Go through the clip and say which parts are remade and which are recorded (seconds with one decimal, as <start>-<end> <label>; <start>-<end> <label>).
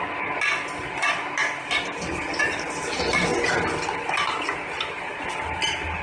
0.0-6.0 recorded